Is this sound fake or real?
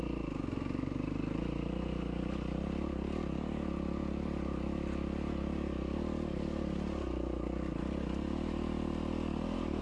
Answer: real